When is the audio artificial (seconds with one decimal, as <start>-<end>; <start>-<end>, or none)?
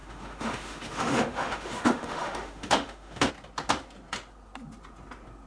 0.0-3.3